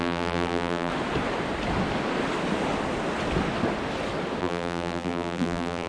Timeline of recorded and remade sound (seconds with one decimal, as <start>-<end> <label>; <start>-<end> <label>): 0.0-0.9 remade; 0.9-4.4 recorded; 4.4-5.9 remade